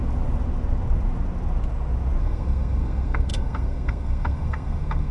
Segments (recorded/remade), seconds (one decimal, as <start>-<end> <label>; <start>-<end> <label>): 0.0-2.2 recorded; 2.2-5.1 remade